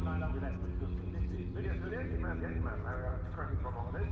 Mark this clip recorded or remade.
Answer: recorded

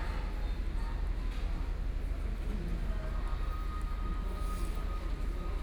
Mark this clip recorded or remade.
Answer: recorded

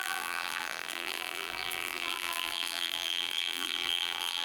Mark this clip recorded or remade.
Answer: remade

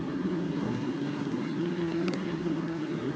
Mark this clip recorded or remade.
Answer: remade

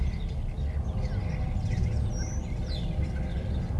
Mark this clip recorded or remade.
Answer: recorded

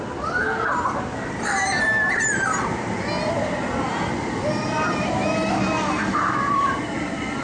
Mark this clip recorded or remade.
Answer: recorded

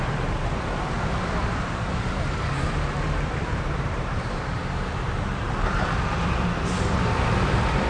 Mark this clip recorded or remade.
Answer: remade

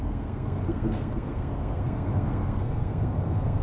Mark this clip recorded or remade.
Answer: remade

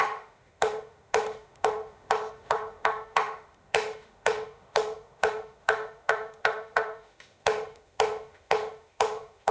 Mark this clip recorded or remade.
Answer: remade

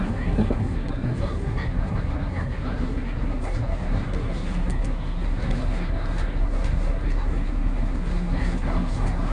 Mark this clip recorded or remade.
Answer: remade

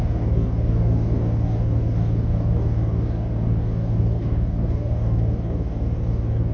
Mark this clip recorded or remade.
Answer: remade